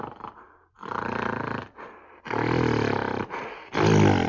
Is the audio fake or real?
real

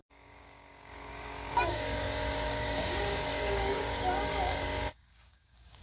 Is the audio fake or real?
fake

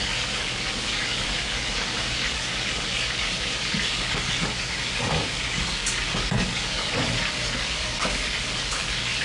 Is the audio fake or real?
fake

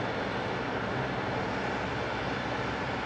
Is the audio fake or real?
real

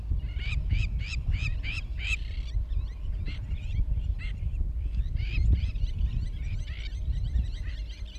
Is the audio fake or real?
real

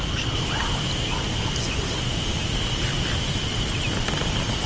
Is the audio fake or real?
real